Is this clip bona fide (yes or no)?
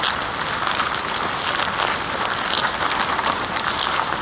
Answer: yes